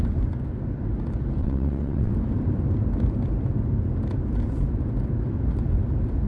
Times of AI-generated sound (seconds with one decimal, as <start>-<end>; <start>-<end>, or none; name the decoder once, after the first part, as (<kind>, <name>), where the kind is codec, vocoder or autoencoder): 1.4-2.1 (vocoder, WaveNeXt)